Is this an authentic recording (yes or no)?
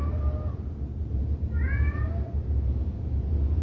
yes